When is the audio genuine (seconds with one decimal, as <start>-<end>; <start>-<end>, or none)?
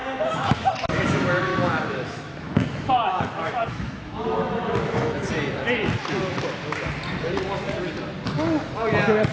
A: 1.0-1.5; 5.3-9.3